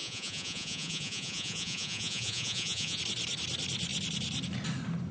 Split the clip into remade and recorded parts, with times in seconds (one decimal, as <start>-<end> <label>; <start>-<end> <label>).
0.0-3.0 remade; 3.0-5.1 recorded